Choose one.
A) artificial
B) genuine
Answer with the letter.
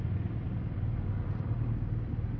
B